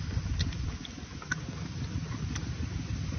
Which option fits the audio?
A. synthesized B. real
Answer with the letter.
B